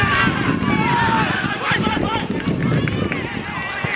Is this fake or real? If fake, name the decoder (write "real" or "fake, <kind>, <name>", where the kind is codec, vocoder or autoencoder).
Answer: real